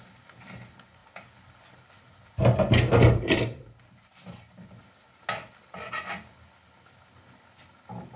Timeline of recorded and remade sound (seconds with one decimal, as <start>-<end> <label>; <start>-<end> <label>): 0.0-8.2 recorded